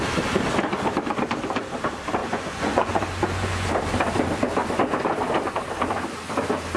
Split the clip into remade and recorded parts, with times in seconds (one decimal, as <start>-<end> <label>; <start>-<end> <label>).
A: 0.0-2.2 recorded; 2.2-3.7 remade; 3.7-6.8 recorded